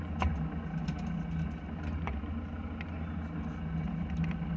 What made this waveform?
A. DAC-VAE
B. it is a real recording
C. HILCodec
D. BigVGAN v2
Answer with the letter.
B